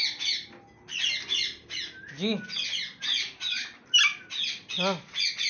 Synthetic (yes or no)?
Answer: no